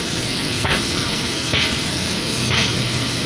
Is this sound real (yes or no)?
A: no